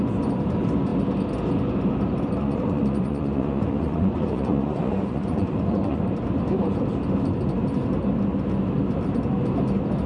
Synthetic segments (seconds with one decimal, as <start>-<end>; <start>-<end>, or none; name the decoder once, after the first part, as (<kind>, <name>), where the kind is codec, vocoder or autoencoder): 2.4-6.0 (vocoder, Vocos)